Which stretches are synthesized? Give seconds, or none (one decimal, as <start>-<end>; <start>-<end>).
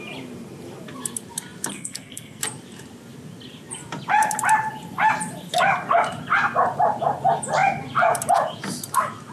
1.7-2.4